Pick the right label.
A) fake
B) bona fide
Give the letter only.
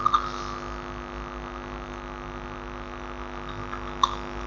B